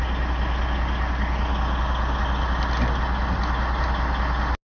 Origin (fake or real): real